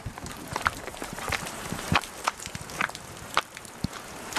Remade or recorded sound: remade